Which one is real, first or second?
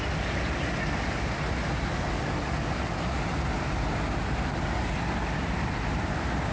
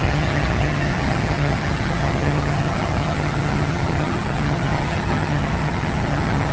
first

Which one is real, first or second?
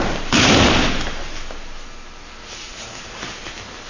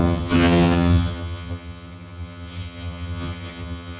first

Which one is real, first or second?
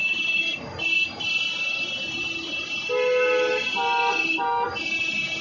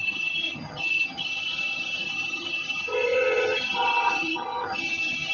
first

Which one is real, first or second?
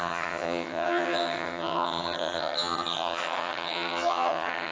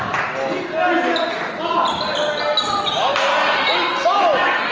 second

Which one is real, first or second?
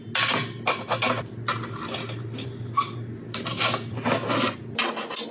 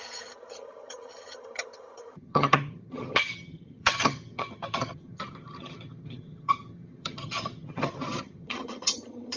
first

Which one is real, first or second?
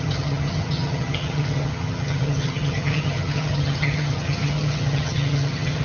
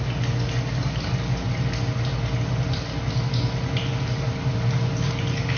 second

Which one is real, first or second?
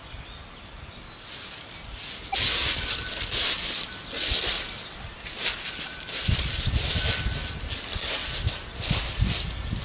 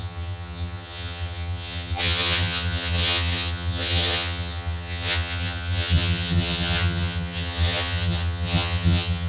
first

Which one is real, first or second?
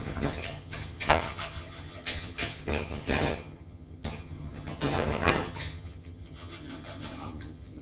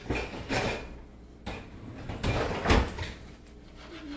second